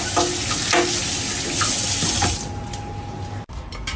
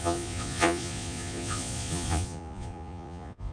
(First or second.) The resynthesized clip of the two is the second